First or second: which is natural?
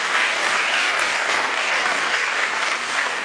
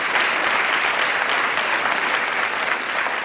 second